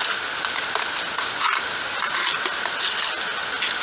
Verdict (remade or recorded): recorded